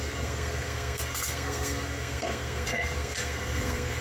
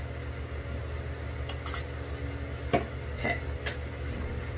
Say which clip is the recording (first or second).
second